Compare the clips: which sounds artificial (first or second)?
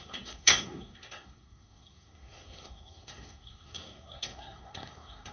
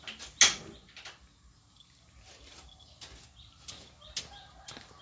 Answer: first